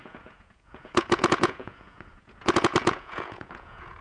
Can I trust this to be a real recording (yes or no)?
no